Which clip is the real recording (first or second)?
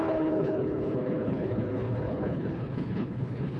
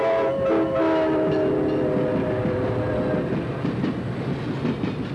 second